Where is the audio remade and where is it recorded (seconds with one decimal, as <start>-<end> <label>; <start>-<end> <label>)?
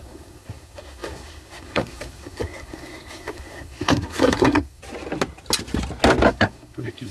0.0-4.8 remade; 4.8-6.3 recorded; 6.3-7.1 remade